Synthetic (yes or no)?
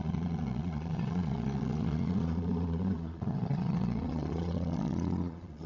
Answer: yes